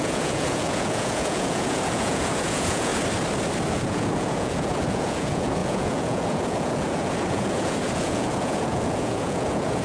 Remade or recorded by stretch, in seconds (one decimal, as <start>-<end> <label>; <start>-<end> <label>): 0.0-2.9 remade; 2.9-3.7 recorded; 3.7-9.8 remade